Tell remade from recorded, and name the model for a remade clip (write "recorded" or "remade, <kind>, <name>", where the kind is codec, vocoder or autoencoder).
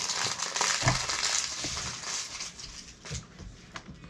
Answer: recorded